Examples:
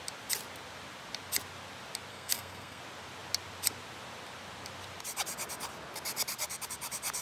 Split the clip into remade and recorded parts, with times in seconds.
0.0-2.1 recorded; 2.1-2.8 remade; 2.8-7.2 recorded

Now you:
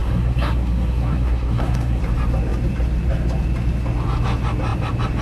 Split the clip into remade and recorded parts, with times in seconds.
0.0-2.0 remade; 2.0-5.2 recorded

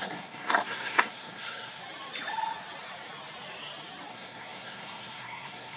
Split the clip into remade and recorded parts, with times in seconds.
0.0-1.8 remade; 1.8-4.1 recorded; 4.1-5.8 remade

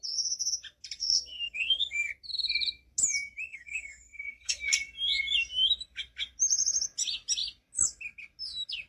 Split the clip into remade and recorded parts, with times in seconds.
0.0-1.0 recorded; 1.0-2.1 remade; 2.1-3.5 recorded; 3.5-4.6 remade; 4.6-8.9 recorded